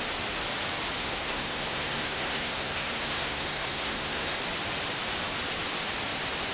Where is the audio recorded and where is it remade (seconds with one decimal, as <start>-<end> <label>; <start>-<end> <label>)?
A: 0.0-1.0 recorded; 1.0-4.4 remade; 4.4-6.5 recorded